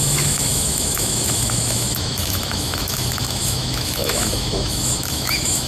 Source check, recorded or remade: remade